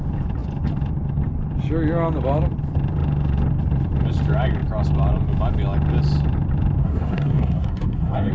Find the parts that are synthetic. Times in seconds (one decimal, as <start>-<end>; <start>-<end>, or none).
6.8-8.3